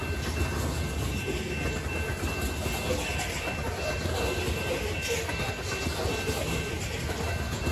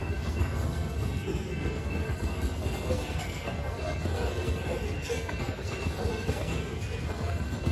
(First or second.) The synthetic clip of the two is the second